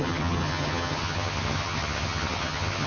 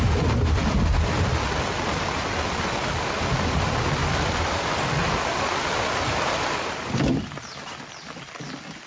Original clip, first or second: second